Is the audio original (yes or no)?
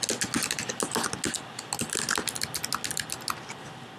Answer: yes